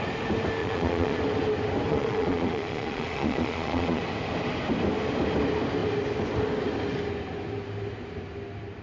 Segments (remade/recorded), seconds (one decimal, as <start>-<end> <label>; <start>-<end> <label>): 0.0-0.6 recorded; 0.6-1.2 remade; 1.2-1.9 recorded; 1.9-4.0 remade; 4.0-8.8 recorded